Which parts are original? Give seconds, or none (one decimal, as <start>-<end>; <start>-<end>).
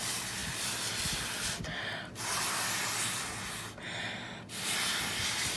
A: 0.0-5.6